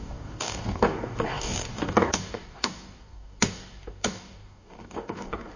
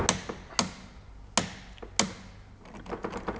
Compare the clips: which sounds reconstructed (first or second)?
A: first